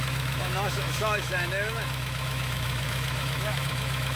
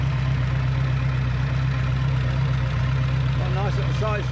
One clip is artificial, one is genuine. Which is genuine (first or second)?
second